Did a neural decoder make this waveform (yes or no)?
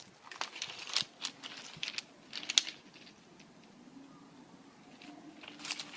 no